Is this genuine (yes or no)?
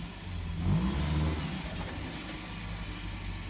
yes